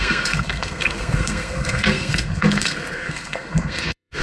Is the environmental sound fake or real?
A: fake